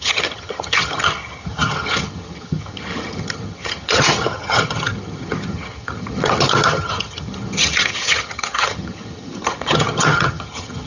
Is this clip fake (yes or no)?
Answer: yes